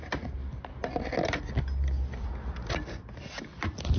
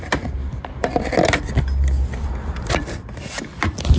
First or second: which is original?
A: first